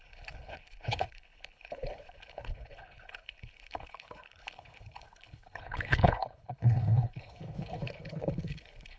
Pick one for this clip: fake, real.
fake